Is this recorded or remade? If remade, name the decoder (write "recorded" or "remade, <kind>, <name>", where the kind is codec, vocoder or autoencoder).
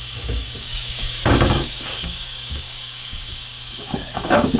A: remade, codec, DAC